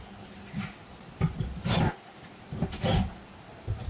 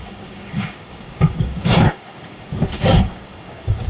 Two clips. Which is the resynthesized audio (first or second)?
second